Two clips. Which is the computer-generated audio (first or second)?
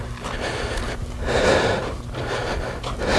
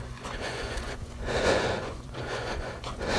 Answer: second